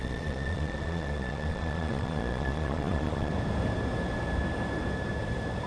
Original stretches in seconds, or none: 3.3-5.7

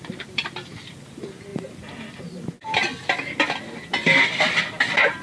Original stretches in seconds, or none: none

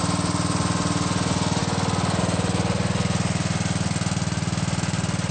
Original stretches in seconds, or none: 0.0-5.3

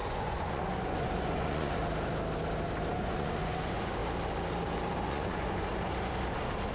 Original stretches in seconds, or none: 1.8-2.9; 4.0-5.1; 5.7-6.7

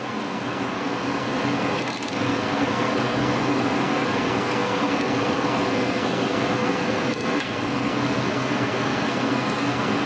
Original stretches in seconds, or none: none

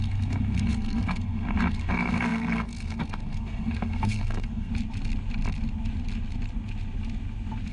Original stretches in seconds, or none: 4.7-7.7

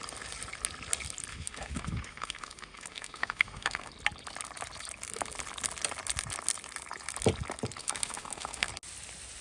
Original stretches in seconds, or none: 0.0-1.3; 3.9-7.8; 8.7-9.4